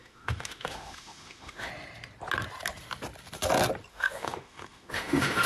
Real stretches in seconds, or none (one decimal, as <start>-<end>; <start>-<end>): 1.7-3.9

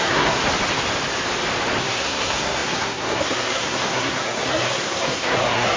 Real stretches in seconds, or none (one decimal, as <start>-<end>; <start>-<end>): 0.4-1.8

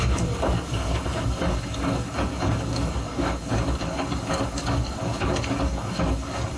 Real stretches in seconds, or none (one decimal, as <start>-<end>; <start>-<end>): none